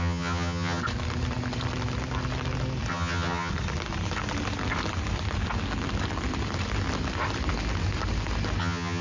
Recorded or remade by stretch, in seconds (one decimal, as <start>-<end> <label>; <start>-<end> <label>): 0.0-0.8 remade; 0.8-2.9 recorded; 2.9-3.5 remade; 3.5-8.6 recorded; 8.6-9.0 remade